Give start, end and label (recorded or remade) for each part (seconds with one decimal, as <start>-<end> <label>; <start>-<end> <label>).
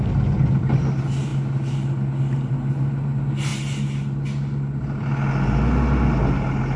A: 0.0-6.8 recorded